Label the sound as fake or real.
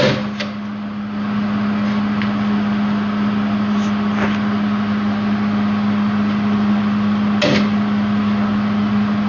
real